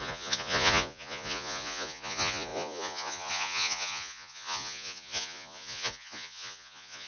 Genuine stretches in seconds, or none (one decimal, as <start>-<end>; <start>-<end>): none